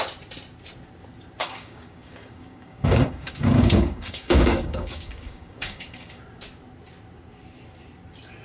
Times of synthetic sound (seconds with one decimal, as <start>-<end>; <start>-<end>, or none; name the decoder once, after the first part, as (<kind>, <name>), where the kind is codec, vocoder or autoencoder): 1.4-6.2 (codec, DAC)